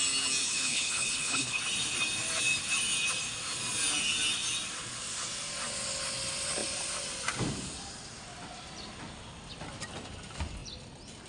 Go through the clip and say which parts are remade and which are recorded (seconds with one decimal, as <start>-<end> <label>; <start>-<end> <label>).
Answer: 0.0-0.4 recorded; 0.4-1.6 remade; 1.6-11.3 recorded